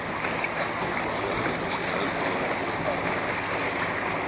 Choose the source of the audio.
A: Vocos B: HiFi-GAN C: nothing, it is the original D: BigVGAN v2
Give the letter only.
C